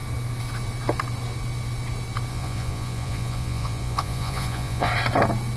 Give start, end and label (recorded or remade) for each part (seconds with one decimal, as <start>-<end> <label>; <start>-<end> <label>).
0.0-2.3 recorded; 2.3-4.9 remade; 4.9-5.6 recorded